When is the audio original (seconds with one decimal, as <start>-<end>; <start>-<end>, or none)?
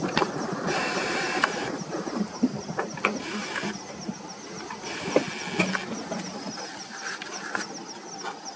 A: 5.2-8.6